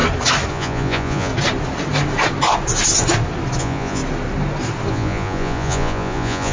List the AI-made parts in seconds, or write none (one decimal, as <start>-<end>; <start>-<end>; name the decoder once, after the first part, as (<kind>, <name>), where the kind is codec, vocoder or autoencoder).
0.5-1.3 (vocoder, Vocos); 3.6-4.0; 4.9-6.5